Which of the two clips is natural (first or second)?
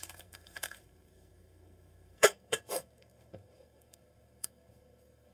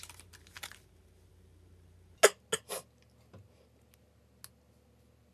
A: second